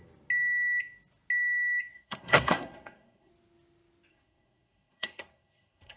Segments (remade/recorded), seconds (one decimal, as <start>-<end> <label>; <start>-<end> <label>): 0.0-1.9 recorded; 1.9-3.3 remade; 3.3-4.1 recorded; 4.1-6.0 remade